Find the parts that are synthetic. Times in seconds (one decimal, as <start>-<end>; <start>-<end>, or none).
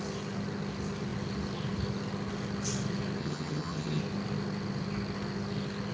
3.2-4.0